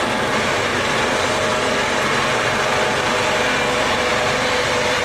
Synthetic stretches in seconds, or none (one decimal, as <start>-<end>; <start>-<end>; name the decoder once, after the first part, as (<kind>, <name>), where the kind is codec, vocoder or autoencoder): 4.1-5.0 (vocoder, BigVGAN v2)